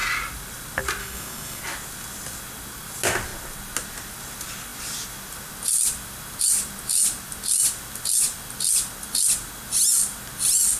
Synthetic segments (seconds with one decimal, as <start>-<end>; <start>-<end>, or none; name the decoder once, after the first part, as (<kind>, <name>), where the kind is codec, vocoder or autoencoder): 1.0-1.6 (codec, SNAC)